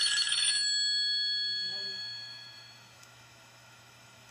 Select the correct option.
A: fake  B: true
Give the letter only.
A